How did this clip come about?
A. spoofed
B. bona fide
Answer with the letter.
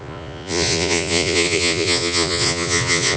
A